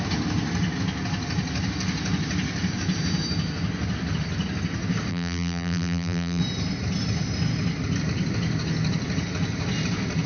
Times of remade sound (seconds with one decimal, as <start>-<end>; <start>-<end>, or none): 5.1-6.4